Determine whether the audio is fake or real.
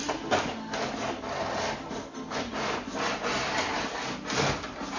real